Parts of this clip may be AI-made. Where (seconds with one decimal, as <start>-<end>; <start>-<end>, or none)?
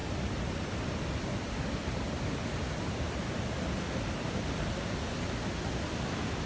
none